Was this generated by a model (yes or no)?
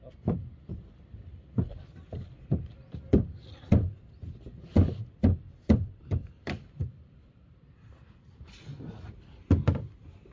no